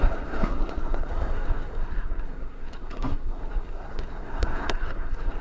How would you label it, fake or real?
fake